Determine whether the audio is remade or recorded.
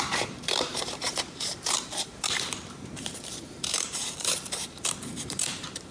remade